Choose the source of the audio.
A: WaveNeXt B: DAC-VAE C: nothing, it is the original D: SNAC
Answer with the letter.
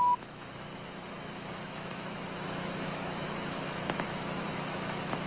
B